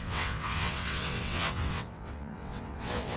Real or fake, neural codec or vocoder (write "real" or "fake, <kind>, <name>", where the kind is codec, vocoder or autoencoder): fake, vocoder, WaveNeXt